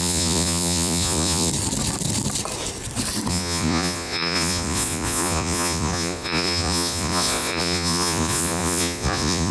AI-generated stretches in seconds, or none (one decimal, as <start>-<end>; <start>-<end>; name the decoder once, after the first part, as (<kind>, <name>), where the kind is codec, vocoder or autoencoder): 0.0-1.5 (vocoder, Vocos); 3.3-9.5